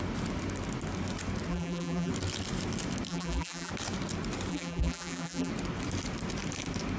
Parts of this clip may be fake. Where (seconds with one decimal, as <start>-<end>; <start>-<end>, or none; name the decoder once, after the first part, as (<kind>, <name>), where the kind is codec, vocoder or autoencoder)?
1.5-2.1 (vocoder, BigVGAN v2); 3.1-3.7; 4.5-5.5